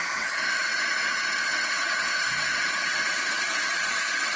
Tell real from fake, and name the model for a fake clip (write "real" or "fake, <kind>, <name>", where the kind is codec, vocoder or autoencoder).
fake, vocoder, WaveNeXt